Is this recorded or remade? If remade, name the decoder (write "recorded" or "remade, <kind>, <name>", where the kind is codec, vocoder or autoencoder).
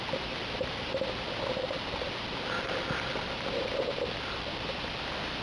recorded